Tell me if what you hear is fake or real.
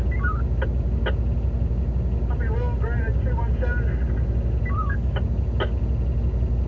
real